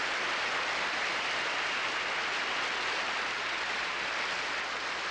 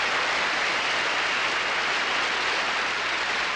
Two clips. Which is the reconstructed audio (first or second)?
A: first